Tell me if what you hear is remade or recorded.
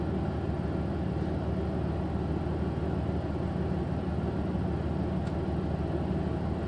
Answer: recorded